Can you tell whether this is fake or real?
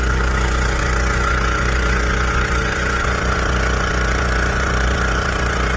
fake